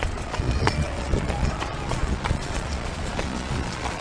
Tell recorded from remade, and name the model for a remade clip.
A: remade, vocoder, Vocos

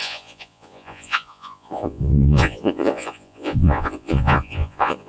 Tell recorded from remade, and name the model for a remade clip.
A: remade, vocoder, Vocos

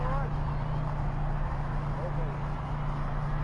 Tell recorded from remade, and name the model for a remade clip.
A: recorded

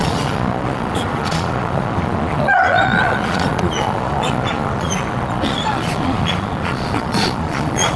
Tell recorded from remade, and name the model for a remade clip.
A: remade, vocoder, Vocos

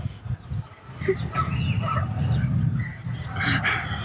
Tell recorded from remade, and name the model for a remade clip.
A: recorded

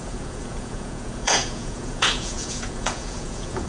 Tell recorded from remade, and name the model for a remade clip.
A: remade, vocoder, Vocos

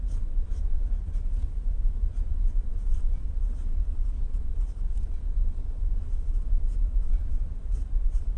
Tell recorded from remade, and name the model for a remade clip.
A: remade, vocoder, Vocos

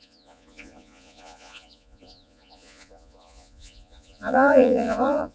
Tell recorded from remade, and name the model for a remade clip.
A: remade, vocoder, Vocos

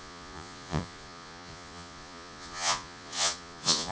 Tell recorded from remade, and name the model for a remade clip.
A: remade, vocoder, Vocos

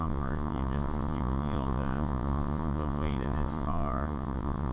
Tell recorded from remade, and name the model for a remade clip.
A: remade, vocoder, Vocos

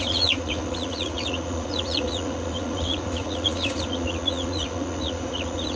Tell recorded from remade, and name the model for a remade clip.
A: remade, vocoder, Vocos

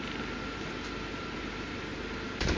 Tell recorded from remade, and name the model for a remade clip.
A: recorded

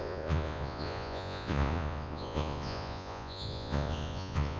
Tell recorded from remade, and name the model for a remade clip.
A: remade, vocoder, Vocos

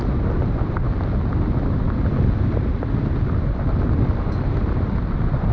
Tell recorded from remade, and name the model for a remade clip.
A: recorded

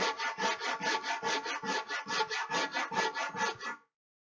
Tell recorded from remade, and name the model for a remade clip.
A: recorded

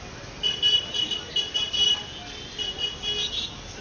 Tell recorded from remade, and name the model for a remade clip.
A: recorded